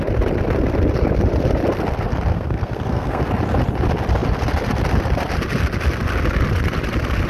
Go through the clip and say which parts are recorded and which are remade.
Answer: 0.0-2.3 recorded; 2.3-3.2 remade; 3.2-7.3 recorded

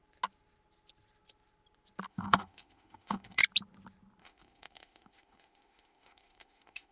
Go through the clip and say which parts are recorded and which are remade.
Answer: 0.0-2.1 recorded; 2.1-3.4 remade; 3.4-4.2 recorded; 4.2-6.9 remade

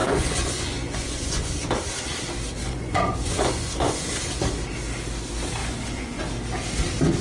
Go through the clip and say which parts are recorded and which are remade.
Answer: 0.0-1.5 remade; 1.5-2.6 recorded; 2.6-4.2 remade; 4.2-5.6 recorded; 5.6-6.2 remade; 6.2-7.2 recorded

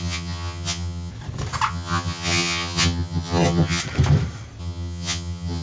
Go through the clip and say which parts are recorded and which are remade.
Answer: 0.0-1.1 remade; 1.1-1.7 recorded; 1.7-3.8 remade; 3.8-4.6 recorded; 4.6-5.6 remade

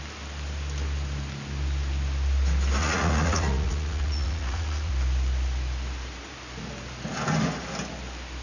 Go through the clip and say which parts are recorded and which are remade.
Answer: 0.0-2.8 recorded; 2.8-4.9 remade; 4.9-8.4 recorded

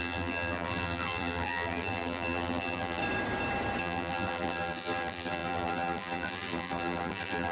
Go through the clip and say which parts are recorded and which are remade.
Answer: 0.0-3.0 remade; 3.0-3.8 recorded; 3.8-7.5 remade

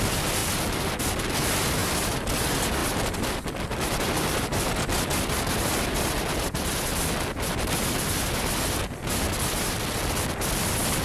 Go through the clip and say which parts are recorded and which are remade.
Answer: 0.0-0.4 recorded; 0.4-1.0 remade; 1.0-1.8 recorded; 1.8-2.4 remade; 2.4-2.8 recorded; 2.8-4.7 remade; 4.7-6.9 recorded; 6.9-8.5 remade; 8.5-11.0 recorded

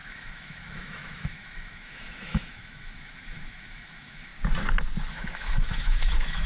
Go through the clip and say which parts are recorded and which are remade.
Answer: 0.0-4.3 remade; 4.3-5.1 recorded; 5.1-6.5 remade